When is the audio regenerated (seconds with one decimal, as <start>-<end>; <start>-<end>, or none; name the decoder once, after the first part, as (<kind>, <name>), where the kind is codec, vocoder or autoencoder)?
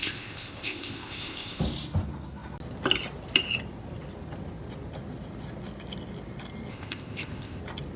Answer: 0.0-1.6 (codec, ZipCodec); 6.7-7.6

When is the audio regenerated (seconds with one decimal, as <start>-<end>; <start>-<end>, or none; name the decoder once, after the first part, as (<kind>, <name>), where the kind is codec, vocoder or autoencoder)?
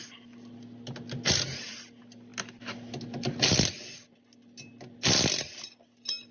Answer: none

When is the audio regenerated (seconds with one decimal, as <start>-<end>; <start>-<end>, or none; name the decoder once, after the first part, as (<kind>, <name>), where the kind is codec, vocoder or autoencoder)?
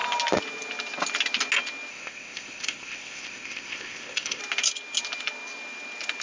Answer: 1.9-4.4 (codec, ZipCodec)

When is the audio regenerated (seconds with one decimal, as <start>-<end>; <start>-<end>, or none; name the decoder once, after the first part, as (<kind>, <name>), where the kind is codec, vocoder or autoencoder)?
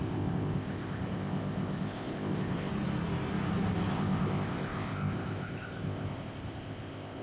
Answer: 0.0-2.7 (codec, ZipCodec); 3.9-7.2